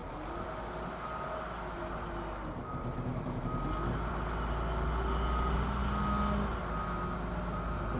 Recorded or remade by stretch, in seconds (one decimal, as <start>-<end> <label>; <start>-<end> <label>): 0.0-8.0 recorded